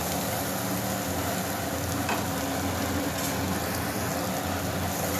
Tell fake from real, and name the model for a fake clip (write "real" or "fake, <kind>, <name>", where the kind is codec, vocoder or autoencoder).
real